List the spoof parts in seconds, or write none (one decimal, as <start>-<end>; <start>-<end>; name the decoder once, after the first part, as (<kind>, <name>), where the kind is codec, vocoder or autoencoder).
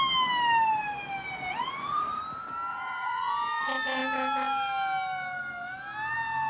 1.5-2.2 (vocoder, Vocos); 2.7-3.3